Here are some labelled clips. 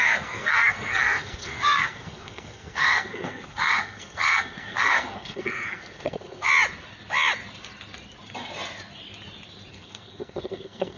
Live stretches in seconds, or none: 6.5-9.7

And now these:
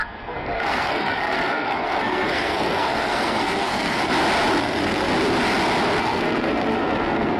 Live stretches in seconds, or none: 4.1-4.6; 5.1-6.0

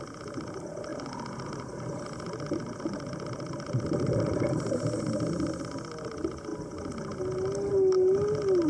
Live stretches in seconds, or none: 0.0-8.7

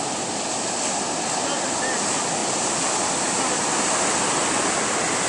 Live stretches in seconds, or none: 0.0-5.3

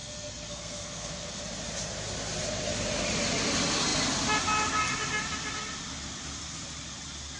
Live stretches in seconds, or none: 1.4-7.4

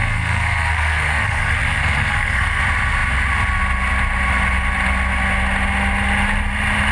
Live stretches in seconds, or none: 2.6-6.9

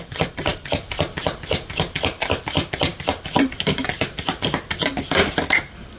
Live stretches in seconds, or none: 0.0-6.0

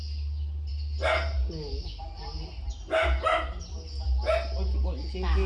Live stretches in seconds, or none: 0.0-5.5